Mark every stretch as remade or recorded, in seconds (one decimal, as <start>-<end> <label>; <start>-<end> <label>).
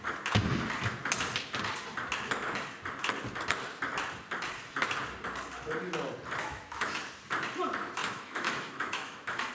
0.0-6.4 recorded; 6.4-7.0 remade; 7.0-8.0 recorded; 8.0-9.5 remade